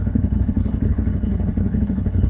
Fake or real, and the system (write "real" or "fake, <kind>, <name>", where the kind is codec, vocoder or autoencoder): fake, codec, HILCodec